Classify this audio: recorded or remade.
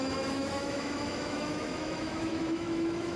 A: remade